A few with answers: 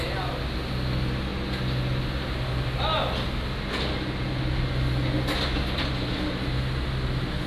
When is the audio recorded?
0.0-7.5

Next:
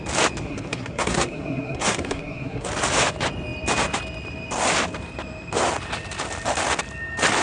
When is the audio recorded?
0.0-0.4; 2.7-7.4

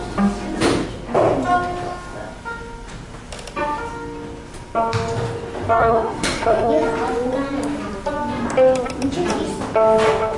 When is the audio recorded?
0.0-5.8; 6.7-10.4

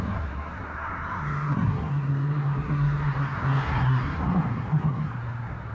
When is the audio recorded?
none